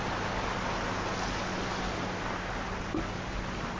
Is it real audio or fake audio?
real